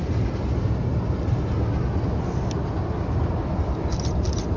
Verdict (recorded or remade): recorded